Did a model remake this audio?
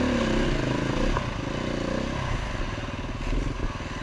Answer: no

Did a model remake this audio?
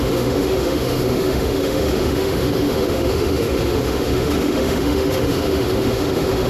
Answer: yes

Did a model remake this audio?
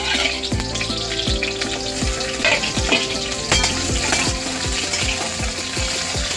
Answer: no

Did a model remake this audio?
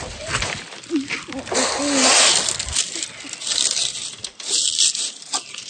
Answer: no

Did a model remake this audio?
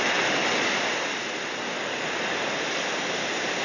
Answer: no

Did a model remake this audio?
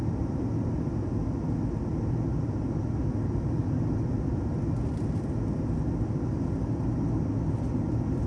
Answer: no